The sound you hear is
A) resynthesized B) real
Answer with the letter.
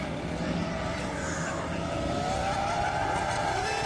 B